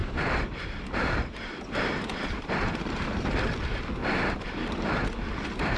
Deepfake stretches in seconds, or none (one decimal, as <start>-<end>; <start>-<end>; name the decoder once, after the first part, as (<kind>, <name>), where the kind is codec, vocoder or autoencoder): 0.0-3.5 (vocoder, BigVGAN v2); 4.0-5.8